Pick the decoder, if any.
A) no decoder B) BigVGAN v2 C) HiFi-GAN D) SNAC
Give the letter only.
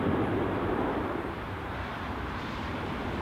B